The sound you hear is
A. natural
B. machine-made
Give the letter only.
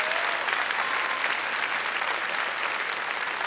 A